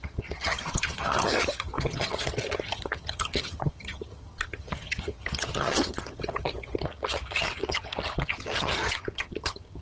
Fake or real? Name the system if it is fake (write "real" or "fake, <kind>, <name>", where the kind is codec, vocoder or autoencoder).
fake, vocoder, HiFi-GAN